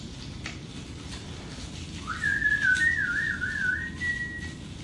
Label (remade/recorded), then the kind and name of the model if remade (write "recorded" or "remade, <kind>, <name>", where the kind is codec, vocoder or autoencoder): recorded